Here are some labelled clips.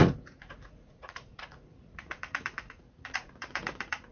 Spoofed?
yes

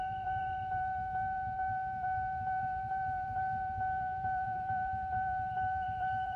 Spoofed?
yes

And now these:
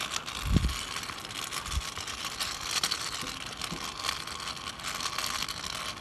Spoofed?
no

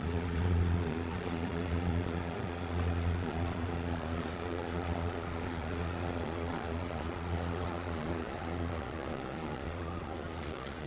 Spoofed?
yes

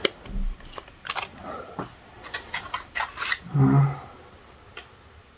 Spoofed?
no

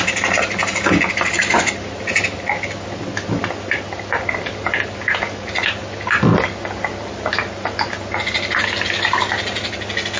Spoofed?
no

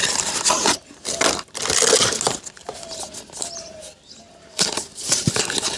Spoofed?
no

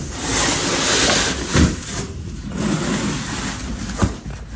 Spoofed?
no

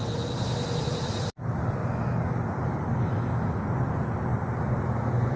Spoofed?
no